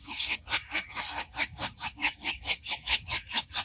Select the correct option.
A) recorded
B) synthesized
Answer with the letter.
B